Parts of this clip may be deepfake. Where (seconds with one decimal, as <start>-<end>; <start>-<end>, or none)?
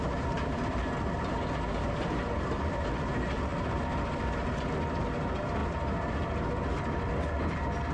none